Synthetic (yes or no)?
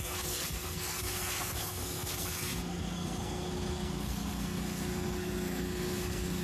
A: yes